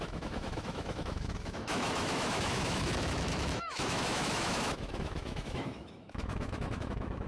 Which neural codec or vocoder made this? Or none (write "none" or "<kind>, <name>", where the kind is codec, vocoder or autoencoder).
autoencoder, DAC-VAE